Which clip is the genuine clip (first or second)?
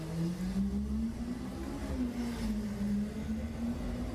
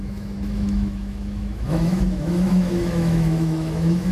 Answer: first